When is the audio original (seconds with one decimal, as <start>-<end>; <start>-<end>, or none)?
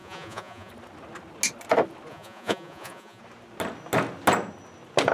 0.7-2.1; 3.2-5.1